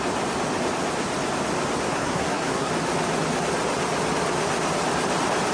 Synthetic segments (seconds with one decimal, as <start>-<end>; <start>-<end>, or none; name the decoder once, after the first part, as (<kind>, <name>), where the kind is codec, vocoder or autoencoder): 1.9-2.7 (codec, SNAC)